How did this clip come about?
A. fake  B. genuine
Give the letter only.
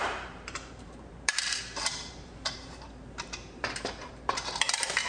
A